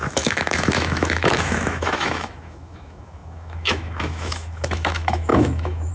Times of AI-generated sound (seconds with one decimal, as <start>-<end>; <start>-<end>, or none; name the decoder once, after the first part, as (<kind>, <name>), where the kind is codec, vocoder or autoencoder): 0.0-5.9 (autoencoder, DAC-VAE)